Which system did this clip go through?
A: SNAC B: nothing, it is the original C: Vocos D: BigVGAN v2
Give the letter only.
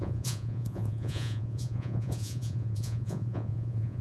C